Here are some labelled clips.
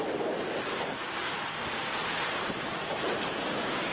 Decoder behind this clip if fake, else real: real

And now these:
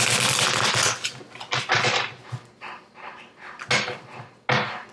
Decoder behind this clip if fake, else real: real